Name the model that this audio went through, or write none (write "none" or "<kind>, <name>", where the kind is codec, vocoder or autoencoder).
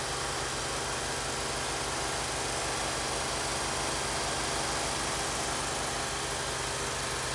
none